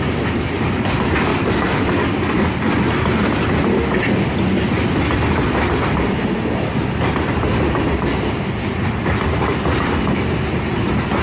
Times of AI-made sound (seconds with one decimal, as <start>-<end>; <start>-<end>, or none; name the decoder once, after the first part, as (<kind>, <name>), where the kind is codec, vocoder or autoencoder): 1.3-2.1 (codec, DAC)